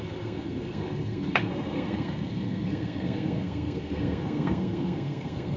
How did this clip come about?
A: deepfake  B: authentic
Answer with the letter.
A